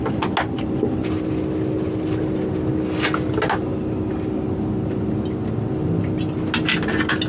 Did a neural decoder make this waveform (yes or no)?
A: no